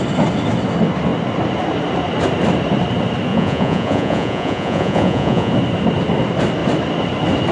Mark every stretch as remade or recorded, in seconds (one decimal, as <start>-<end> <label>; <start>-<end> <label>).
0.0-3.3 recorded; 3.3-5.5 remade; 5.5-7.5 recorded